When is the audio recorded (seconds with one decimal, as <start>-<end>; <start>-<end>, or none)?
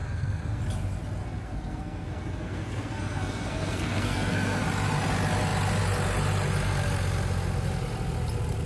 0.6-1.2; 4.6-8.7